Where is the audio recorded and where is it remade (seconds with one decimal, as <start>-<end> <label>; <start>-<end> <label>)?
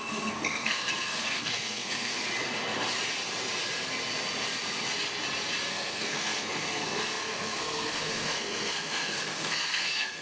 0.0-2.2 remade; 2.2-5.7 recorded; 5.7-10.2 remade